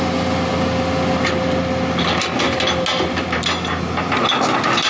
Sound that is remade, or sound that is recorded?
recorded